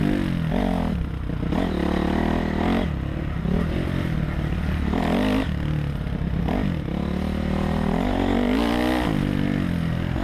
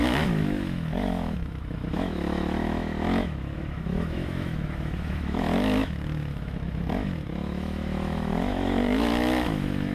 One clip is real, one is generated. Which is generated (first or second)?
second